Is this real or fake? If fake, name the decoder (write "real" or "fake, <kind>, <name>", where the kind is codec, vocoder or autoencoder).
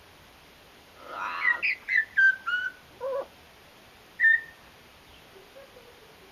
real